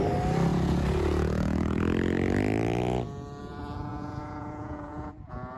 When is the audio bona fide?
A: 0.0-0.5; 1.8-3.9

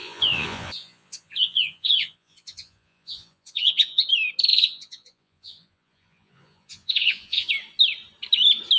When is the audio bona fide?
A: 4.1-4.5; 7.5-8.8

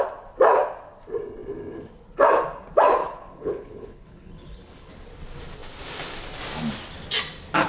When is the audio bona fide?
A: 0.0-3.0; 4.9-7.7